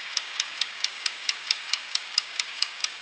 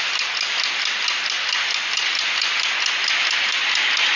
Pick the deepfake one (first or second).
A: first